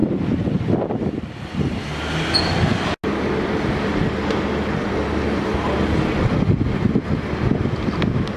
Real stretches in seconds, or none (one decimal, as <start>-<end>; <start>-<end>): 0.0-8.4